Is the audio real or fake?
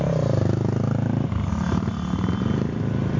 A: real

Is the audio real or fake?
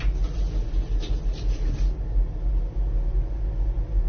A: real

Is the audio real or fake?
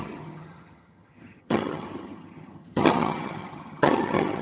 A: fake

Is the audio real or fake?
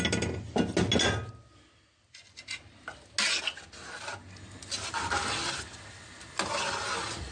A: real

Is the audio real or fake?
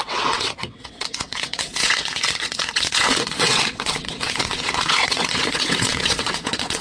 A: fake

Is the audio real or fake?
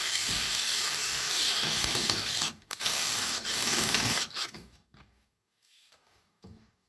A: fake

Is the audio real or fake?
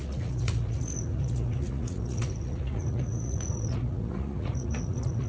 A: fake